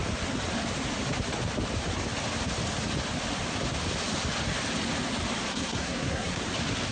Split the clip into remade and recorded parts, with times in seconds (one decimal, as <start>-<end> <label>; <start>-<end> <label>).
0.0-5.5 recorded; 5.5-6.4 remade; 6.4-6.9 recorded